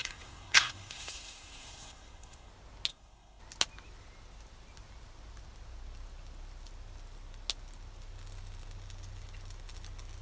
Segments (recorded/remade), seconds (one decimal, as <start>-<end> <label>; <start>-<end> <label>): 0.0-2.5 remade; 2.5-2.9 recorded; 2.9-3.4 remade; 3.4-10.2 recorded